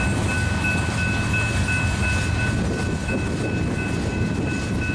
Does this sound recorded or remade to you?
recorded